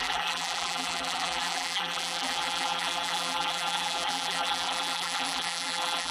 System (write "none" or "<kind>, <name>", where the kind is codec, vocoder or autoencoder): vocoder, BigVGAN v2